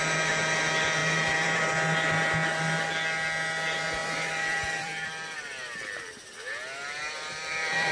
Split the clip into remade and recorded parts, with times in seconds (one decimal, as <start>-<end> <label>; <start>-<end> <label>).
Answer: 0.0-1.0 recorded; 1.0-1.6 remade; 1.6-4.0 recorded; 4.0-7.9 remade